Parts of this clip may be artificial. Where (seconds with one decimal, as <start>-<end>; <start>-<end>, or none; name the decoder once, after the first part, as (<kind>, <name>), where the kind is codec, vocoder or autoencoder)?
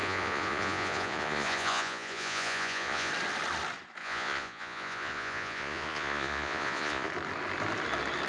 0.0-3.1 (vocoder, Vocos); 4.0-7.1